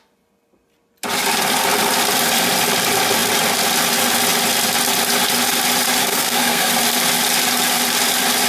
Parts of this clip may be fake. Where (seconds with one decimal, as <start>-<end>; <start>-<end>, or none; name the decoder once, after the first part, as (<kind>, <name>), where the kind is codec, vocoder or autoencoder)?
6.1-6.7 (codec, SNAC)